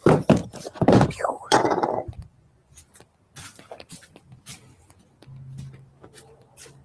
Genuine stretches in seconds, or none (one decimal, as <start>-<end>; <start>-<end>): 0.0-0.4; 2.8-6.8